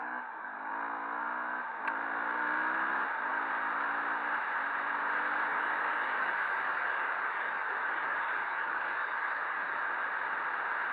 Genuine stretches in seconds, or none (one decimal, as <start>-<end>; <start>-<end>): 0.7-5.5; 9.9-10.9